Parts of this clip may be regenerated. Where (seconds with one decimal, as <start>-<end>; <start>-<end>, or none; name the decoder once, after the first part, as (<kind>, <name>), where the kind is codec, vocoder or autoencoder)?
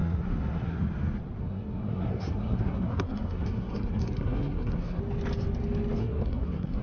0.0-0.8 (codec, SNAC); 1.4-5.0; 6.0-6.8